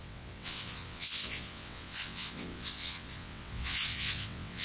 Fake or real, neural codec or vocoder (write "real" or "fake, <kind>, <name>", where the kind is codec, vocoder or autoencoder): fake, vocoder, WaveNeXt